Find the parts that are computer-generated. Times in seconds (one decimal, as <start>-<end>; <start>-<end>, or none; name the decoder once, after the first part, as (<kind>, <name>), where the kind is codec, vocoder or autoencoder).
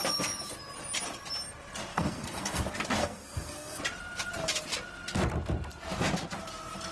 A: 1.9-2.6 (codec, SNAC); 3.0-3.8